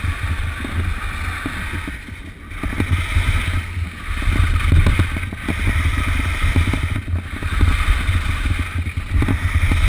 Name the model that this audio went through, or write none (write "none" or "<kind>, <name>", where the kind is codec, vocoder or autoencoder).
none